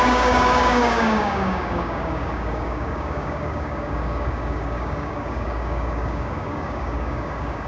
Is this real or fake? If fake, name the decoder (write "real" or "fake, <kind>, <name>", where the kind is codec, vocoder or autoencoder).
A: fake, codec, DAC